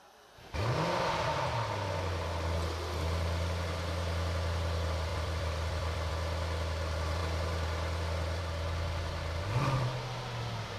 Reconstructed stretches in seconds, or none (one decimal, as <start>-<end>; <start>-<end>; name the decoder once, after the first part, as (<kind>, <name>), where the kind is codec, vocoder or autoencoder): 5.1-6.1 (vocoder, BigVGAN v2)